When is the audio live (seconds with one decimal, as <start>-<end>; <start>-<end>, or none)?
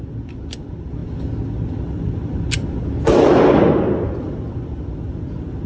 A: 0.0-5.7